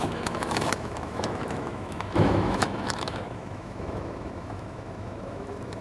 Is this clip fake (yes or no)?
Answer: yes